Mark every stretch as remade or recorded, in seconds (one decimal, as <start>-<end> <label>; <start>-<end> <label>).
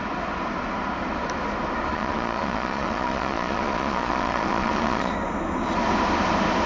0.0-1.9 recorded; 1.9-5.1 remade; 5.1-6.7 recorded